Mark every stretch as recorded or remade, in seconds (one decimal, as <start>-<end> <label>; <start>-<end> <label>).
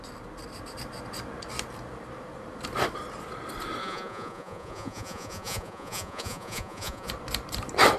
0.0-3.8 recorded; 3.8-7.1 remade; 7.1-8.0 recorded